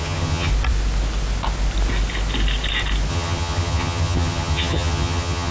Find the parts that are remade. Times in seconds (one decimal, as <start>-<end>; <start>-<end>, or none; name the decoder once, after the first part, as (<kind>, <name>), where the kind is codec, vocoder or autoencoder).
0.0-0.5 (vocoder, HiFi-GAN); 3.1-5.5